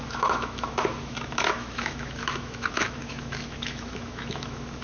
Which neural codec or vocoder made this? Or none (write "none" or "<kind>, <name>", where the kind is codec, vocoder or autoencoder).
autoencoder, DAC-VAE